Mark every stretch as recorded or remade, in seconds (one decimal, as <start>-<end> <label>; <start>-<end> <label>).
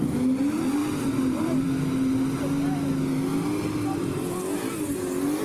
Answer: 0.0-5.4 recorded